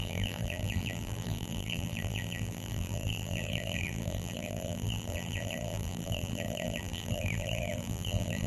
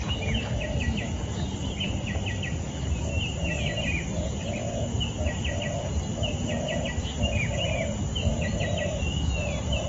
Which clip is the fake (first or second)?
first